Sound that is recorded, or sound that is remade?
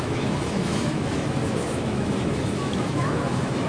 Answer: remade